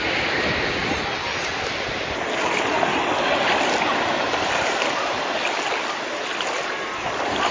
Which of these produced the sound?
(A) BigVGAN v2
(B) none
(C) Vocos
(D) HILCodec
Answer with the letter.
B